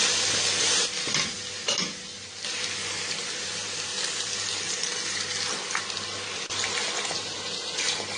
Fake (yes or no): no